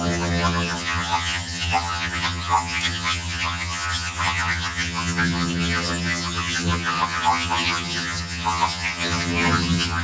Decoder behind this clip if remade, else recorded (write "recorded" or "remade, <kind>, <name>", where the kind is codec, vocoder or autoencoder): remade, vocoder, HiFi-GAN